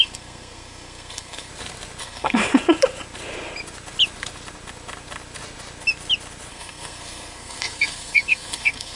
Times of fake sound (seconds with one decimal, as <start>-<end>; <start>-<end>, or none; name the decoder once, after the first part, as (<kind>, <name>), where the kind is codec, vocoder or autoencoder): 0.0-1.5 (codec, SNAC); 2.0-2.4; 6.5-9.0